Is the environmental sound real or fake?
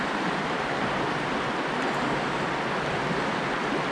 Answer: fake